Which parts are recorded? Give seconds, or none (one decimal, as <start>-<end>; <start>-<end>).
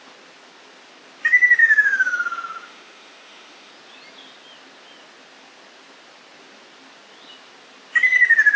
0.0-1.6; 3.7-8.6